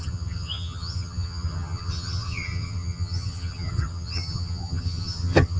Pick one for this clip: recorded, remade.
remade